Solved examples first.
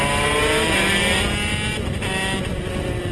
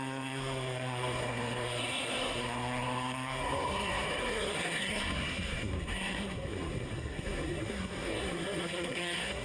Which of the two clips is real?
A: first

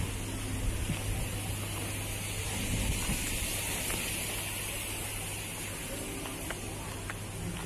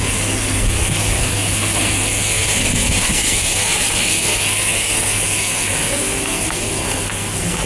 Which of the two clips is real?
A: first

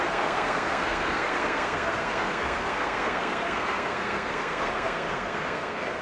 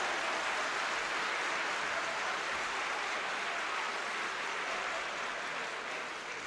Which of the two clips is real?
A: second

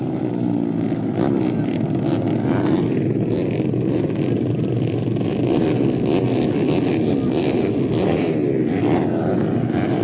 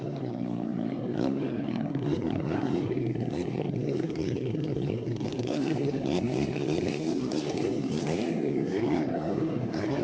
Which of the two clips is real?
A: first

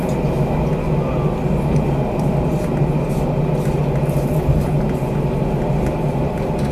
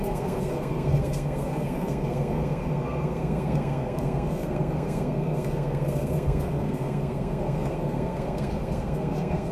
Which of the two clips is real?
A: first